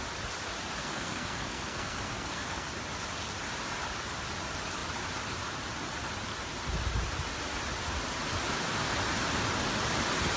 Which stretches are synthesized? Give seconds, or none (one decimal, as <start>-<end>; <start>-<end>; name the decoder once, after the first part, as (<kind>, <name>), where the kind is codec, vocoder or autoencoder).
0.8-2.7 (codec, SNAC)